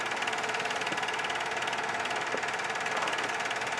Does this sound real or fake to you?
real